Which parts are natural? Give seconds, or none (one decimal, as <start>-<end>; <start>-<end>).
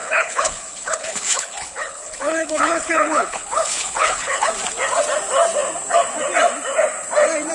4.5-7.5